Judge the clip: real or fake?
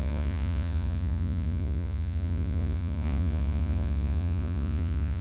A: fake